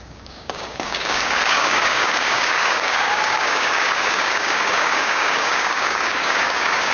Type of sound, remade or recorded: remade